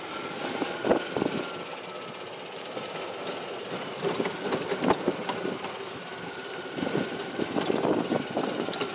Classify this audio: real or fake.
fake